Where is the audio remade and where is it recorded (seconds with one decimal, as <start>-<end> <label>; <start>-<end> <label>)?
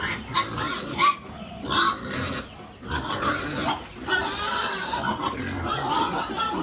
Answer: 0.0-6.6 recorded